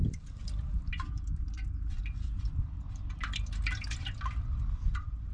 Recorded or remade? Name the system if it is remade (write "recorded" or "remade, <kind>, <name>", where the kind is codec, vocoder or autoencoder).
remade, vocoder, BigVGAN v2